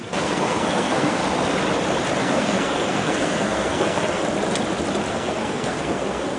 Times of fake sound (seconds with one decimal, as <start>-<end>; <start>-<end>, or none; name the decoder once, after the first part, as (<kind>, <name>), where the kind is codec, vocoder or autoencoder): 0.0-1.2 (codec, SNAC); 2.2-4.2; 5.1-6.4